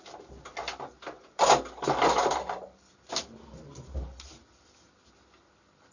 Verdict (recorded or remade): recorded